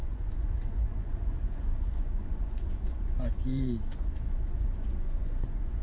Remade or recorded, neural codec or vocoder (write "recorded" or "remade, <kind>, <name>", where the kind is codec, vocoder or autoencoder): remade, vocoder, Vocos